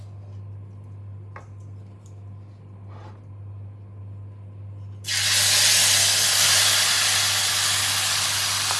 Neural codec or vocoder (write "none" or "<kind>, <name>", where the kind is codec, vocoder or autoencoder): none